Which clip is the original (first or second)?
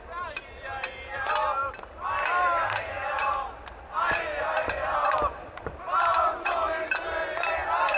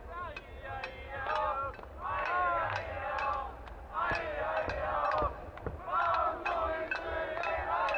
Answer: second